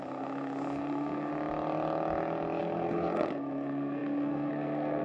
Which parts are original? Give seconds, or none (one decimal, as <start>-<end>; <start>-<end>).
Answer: 1.3-2.6